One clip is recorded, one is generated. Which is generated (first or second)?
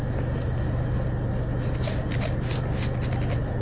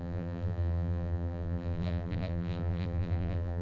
second